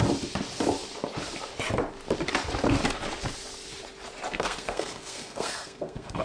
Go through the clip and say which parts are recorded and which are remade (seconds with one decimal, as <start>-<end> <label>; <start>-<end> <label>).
0.0-4.3 recorded; 4.3-6.2 remade